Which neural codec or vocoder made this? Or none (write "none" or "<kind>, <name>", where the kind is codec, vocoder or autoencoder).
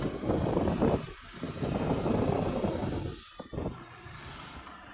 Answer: vocoder, BigVGAN v2